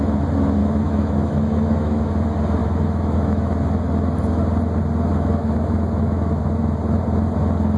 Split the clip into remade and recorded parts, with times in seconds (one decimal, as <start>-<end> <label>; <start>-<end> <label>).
0.0-0.6 recorded; 0.6-2.1 remade; 2.1-2.6 recorded; 2.6-3.5 remade; 3.5-5.1 recorded; 5.1-6.4 remade; 6.4-7.8 recorded